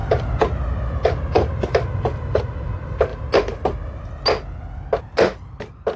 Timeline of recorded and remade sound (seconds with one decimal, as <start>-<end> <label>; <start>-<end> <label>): 0.0-2.4 remade; 2.4-6.0 recorded